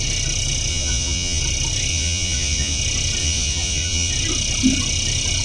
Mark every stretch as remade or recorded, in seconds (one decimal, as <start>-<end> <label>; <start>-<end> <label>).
0.0-0.7 recorded; 0.7-1.4 remade; 1.4-1.9 recorded; 1.9-2.8 remade; 2.8-3.2 recorded; 3.2-4.1 remade; 4.1-5.4 recorded